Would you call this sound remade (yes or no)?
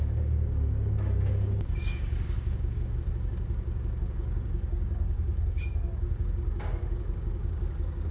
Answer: yes